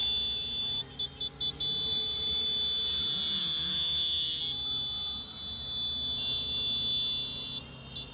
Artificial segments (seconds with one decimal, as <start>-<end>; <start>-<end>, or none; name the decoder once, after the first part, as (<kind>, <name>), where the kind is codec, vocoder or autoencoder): 3.4-4.4 (autoencoder, DAC-VAE)